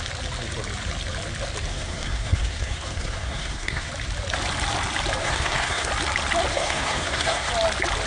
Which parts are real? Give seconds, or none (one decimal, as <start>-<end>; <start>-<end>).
0.0-1.7; 3.9-5.2; 5.9-6.5; 7.5-8.1